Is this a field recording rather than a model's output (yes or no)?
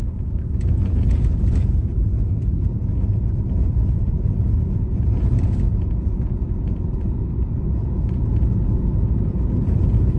no